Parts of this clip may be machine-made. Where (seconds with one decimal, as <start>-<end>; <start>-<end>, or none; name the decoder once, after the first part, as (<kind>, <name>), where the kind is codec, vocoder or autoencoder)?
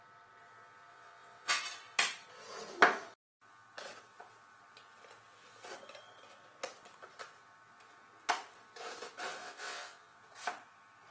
0.9-1.6 (vocoder, WaveNeXt); 9.4-10.2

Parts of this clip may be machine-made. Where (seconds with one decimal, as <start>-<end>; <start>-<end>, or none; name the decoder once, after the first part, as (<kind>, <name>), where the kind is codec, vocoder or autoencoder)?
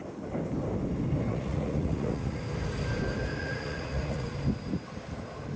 1.3-2.4 (vocoder, Vocos); 3.4-4.3